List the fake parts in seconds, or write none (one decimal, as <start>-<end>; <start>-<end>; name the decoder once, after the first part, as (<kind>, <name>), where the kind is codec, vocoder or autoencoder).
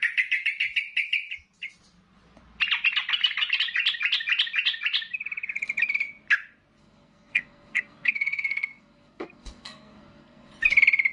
6.8-10.5 (codec, SNAC)